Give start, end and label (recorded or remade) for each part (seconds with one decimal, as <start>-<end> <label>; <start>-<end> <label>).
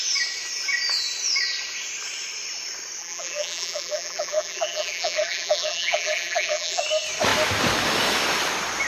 0.0-3.0 recorded; 3.0-6.8 remade; 6.8-8.9 recorded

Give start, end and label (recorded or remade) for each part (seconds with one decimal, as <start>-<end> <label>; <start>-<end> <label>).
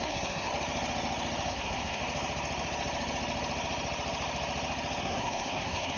0.0-0.5 remade; 0.5-1.5 recorded; 1.5-2.0 remade; 2.0-5.0 recorded; 5.0-6.0 remade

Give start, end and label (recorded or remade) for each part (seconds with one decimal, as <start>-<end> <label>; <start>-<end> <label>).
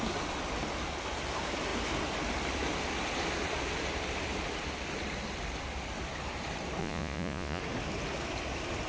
0.0-6.8 recorded; 6.8-7.6 remade; 7.6-8.9 recorded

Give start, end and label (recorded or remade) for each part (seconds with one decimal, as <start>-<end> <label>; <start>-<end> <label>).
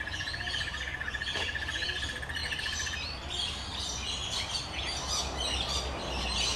0.0-6.6 recorded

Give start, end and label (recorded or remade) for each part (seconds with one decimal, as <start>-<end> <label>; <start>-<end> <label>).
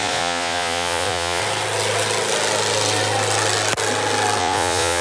0.0-1.4 remade; 1.4-4.4 recorded; 4.4-5.0 remade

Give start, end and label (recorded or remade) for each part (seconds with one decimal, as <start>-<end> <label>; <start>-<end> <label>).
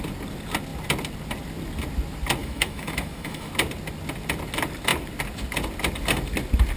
0.0-2.4 recorded; 2.4-3.5 remade; 3.5-6.8 recorded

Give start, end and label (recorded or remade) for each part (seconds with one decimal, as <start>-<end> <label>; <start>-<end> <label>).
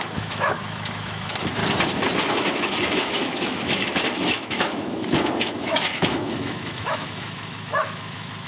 0.0-1.6 remade; 1.6-2.5 recorded; 2.5-8.5 remade